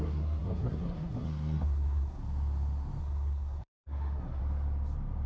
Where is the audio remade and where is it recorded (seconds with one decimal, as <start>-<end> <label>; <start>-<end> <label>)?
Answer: 0.0-2.2 remade; 2.2-3.0 recorded; 3.0-4.4 remade; 4.4-5.3 recorded